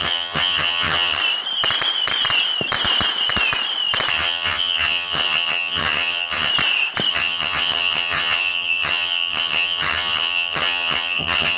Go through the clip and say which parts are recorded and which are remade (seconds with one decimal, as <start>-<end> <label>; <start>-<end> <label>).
0.0-1.2 remade; 1.2-4.1 recorded; 4.1-6.5 remade; 6.5-7.1 recorded; 7.1-11.6 remade